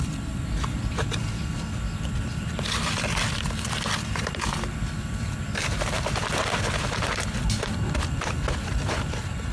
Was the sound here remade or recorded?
remade